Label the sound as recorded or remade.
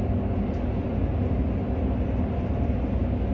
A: recorded